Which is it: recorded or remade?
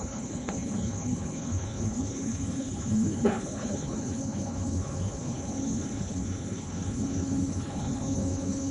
remade